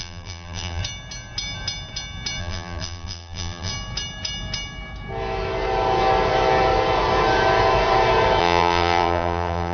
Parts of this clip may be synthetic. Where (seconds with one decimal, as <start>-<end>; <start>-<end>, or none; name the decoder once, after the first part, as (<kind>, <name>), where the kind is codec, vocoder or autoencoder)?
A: 0.0-0.8 (vocoder, BigVGAN v2); 2.4-3.7; 8.4-9.7